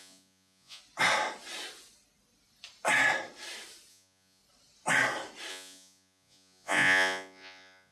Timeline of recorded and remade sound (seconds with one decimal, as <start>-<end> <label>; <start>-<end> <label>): 0.0-0.8 remade; 0.8-3.9 recorded; 3.9-4.4 remade; 4.4-5.5 recorded; 5.5-7.9 remade